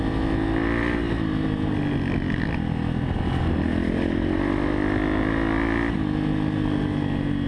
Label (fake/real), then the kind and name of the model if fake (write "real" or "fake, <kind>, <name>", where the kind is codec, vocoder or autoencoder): real